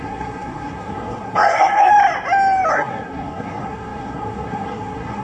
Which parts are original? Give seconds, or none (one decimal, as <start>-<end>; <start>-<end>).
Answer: 1.9-2.7